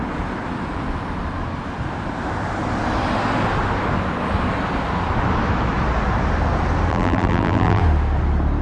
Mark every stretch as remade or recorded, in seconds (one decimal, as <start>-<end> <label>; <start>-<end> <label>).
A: 0.0-6.9 recorded; 6.9-7.8 remade; 7.8-8.6 recorded